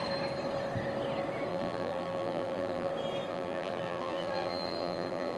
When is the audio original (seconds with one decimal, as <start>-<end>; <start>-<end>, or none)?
0.0-1.5; 2.9-3.3